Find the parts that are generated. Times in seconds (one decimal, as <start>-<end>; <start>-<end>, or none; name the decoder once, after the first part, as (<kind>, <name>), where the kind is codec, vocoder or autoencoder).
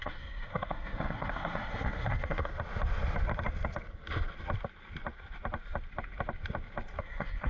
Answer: 0.0-2.5 (codec, SNAC); 7.0-7.5